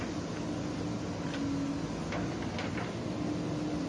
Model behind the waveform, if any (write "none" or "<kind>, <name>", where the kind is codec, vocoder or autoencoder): none